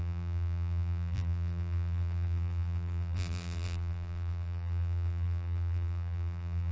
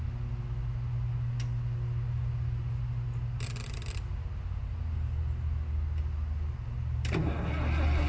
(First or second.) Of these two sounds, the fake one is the first